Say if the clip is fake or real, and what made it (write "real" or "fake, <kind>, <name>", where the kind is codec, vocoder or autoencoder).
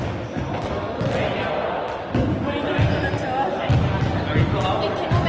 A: real